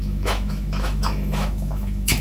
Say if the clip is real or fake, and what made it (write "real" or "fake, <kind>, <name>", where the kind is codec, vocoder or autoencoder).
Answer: fake, autoencoder, DAC-VAE